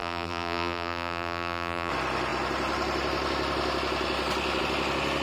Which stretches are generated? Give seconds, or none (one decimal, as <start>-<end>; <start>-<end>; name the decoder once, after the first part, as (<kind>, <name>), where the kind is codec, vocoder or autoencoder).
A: 0.0-1.9 (vocoder, BigVGAN v2)